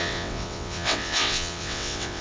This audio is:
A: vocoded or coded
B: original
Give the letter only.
A